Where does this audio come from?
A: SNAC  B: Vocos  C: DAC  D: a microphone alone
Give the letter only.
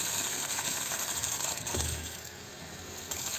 A